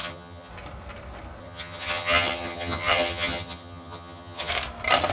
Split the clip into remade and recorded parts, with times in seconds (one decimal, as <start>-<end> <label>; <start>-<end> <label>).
0.0-0.5 remade; 0.5-1.4 recorded; 1.4-4.5 remade; 4.5-5.1 recorded